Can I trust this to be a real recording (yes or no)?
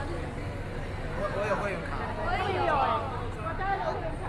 yes